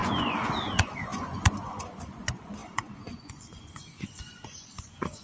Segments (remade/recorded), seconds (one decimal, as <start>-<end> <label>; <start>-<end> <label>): 0.0-5.2 remade